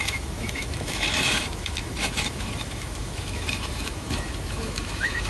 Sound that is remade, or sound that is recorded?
remade